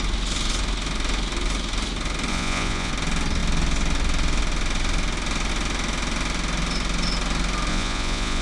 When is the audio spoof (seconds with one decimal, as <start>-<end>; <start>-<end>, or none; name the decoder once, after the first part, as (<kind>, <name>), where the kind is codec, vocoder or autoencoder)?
2.3-2.9 (vocoder, Vocos); 7.7-8.4